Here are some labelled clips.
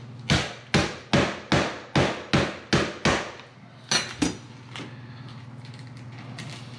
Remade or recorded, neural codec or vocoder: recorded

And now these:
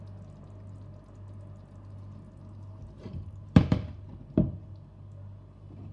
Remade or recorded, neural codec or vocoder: recorded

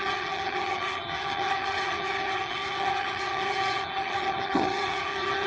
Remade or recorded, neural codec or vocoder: remade, vocoder, HiFi-GAN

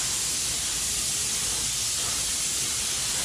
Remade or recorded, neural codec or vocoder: recorded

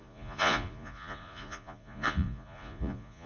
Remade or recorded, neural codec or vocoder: remade, vocoder, Vocos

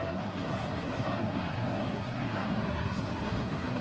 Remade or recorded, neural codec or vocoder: remade, codec, SNAC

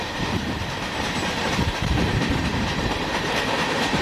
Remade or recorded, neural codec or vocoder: remade, vocoder, BigVGAN v2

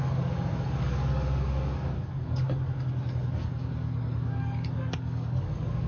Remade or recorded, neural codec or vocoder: remade, codec, DAC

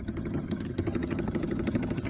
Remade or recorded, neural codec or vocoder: remade, vocoder, HiFi-GAN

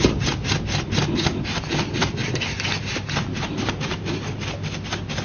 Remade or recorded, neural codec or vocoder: recorded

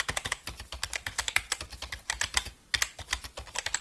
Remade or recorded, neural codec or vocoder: recorded